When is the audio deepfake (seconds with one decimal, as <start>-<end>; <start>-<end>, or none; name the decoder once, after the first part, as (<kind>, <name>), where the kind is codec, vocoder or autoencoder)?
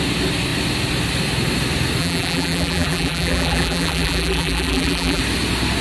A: 2.0-5.2 (vocoder, BigVGAN v2)